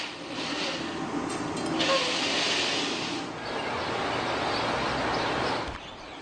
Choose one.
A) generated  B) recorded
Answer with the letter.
B